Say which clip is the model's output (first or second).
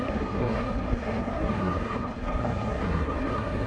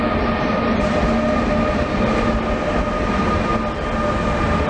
first